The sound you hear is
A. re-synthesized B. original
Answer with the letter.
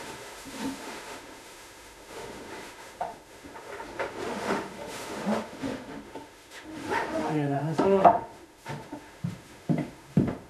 A